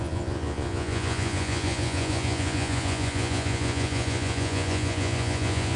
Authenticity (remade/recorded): remade